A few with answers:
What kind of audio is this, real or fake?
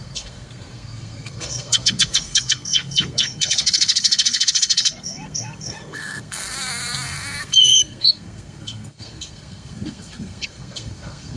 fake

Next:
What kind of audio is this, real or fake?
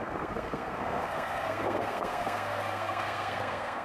fake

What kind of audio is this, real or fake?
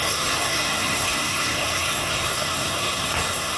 fake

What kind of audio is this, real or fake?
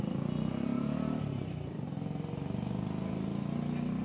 real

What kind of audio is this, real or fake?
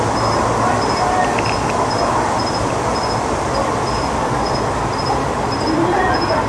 real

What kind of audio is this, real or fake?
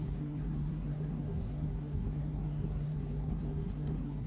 fake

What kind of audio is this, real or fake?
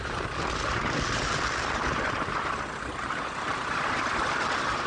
real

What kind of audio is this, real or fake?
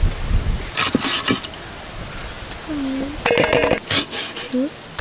real